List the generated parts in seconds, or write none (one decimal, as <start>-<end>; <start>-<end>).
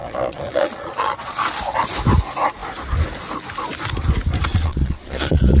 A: 0.0-1.4; 4.5-5.6